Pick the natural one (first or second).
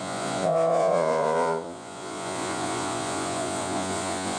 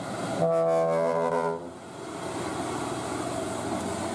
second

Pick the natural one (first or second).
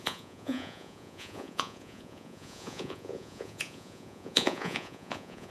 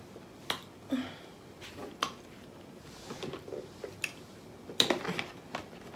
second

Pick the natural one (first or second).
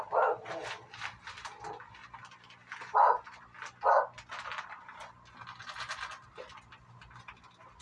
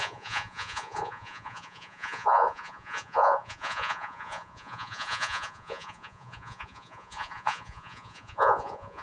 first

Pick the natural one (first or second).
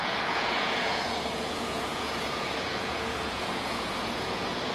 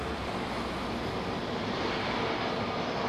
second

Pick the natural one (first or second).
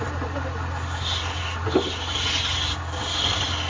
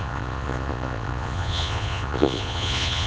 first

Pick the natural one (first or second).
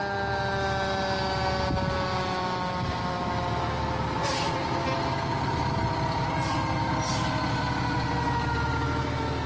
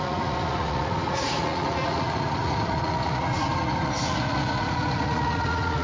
first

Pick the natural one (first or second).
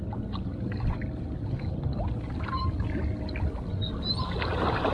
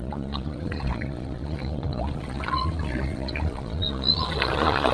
first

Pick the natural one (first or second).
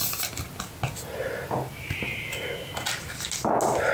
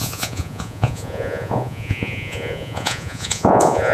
first